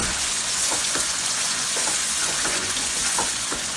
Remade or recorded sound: remade